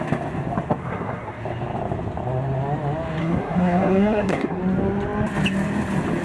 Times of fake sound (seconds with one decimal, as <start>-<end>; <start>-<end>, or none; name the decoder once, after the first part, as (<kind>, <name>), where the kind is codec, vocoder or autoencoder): 0.8-1.4 (codec, SNAC); 3.2-4.6